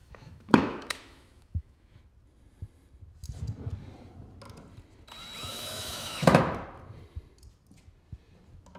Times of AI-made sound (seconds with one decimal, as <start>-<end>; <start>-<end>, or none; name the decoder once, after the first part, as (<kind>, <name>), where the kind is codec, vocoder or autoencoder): 0.0-2.0 (autoencoder, DAC-VAE); 5.5-6.4